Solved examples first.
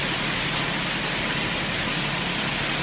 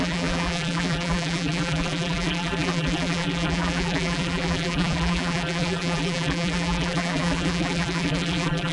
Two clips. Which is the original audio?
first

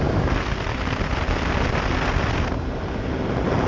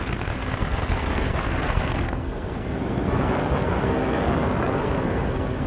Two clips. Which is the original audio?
first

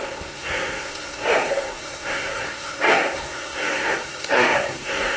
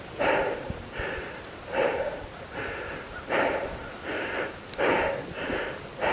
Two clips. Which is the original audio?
second